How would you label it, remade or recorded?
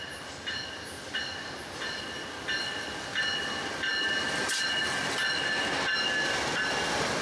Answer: recorded